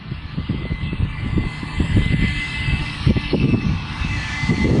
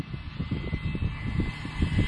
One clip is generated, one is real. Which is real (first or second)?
second